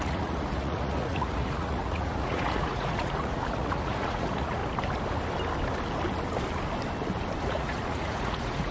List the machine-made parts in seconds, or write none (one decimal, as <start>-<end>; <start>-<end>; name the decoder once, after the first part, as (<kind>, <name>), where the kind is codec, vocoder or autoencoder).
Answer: 0.0-4.6 (vocoder, Vocos); 7.4-8.7